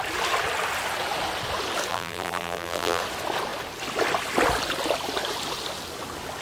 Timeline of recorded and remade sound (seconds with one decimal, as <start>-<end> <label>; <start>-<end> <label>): 0.0-1.9 recorded; 1.9-3.0 remade; 3.0-6.4 recorded